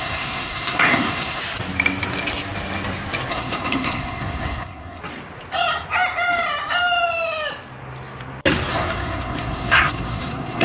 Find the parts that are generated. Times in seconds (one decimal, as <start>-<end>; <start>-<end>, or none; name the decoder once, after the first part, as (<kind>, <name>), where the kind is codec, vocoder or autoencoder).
0.0-1.4 (codec, SNAC); 3.3-5.0; 8.7-10.6